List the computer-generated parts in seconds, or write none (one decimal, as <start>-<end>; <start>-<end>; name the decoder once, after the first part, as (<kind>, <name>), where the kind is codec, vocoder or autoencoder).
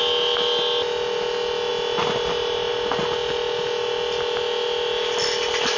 none